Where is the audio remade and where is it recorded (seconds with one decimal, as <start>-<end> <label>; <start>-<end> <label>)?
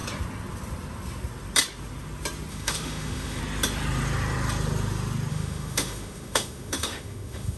0.0-2.5 recorded; 2.5-3.4 remade; 3.4-5.3 recorded; 5.3-7.6 remade